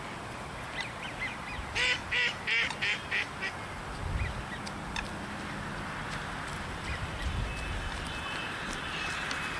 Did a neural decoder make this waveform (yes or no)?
no